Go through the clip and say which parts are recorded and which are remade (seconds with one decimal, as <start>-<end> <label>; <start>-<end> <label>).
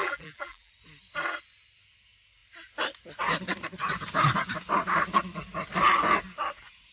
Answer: 0.0-0.7 remade; 0.7-6.9 recorded